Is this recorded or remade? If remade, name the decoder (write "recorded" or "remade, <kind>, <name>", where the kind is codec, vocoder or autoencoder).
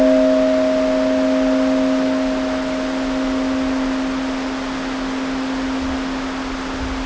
recorded